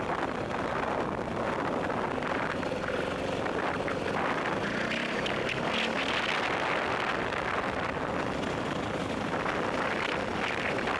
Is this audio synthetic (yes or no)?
no